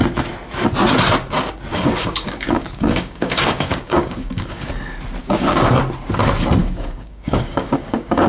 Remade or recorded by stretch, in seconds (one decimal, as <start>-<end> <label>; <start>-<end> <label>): 0.0-1.7 recorded; 1.7-4.7 remade; 4.7-5.2 recorded; 5.2-5.8 remade; 5.8-6.6 recorded; 6.6-8.3 remade